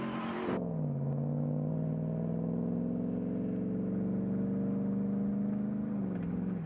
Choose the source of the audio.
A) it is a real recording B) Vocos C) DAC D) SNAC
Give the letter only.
A